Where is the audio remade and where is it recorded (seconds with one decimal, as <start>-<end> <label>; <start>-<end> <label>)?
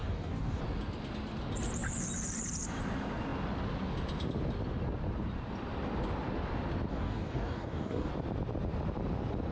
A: 0.0-0.6 remade; 0.6-6.9 recorded; 6.9-8.1 remade; 8.1-9.5 recorded